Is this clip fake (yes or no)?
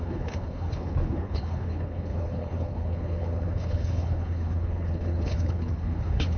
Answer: yes